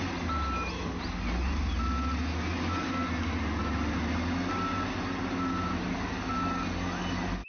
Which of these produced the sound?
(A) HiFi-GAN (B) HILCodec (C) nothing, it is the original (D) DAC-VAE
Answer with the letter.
C